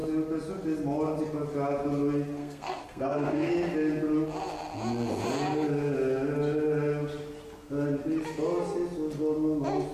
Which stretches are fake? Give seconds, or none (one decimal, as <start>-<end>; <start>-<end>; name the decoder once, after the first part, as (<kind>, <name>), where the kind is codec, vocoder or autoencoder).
2.4-3.5 (codec, SNAC)